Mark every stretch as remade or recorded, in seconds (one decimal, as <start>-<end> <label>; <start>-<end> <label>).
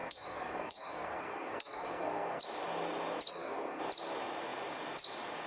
0.0-2.4 remade; 2.4-3.3 recorded; 3.3-3.8 remade; 3.8-5.5 recorded